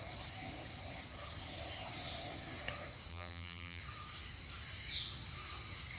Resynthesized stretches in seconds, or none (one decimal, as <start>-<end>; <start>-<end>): 3.1-3.8